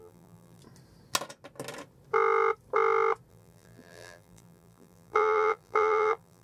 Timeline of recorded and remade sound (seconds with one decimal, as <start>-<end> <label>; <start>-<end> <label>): 0.0-0.6 remade; 0.6-3.3 recorded; 3.3-6.4 remade